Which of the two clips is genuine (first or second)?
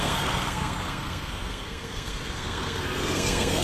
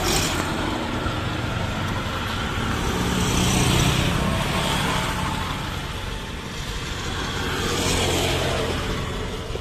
second